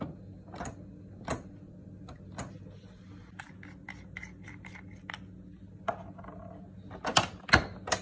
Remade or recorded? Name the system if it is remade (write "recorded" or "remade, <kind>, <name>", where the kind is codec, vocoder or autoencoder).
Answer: recorded